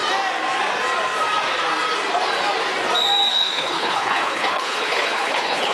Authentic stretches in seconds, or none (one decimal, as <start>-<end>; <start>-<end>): 0.0-3.3